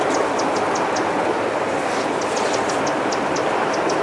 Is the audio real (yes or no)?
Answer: yes